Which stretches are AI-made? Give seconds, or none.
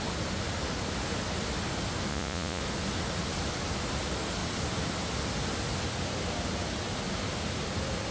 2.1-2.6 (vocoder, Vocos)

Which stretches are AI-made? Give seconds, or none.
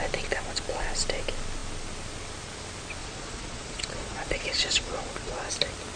3.0-5.5 (vocoder, Vocos)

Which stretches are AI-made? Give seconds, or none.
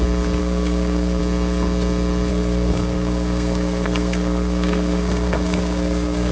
0.4-1.2 (codec, SNAC); 2.3-6.3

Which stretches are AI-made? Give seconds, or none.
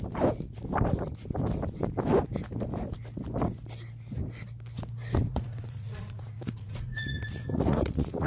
5.3-8.3 (vocoder, Vocos)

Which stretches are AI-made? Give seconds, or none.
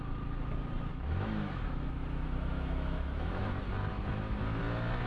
0.9-3.4 (autoencoder, DAC-VAE); 3.9-4.6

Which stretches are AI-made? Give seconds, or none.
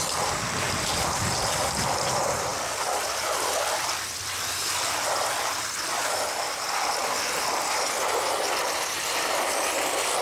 none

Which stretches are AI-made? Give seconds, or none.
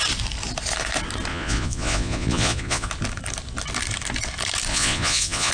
1.3-2.9 (vocoder, Vocos); 4.7-5.5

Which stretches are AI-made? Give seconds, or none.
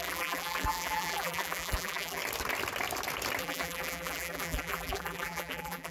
0.0-2.2 (vocoder, BigVGAN v2); 3.4-5.9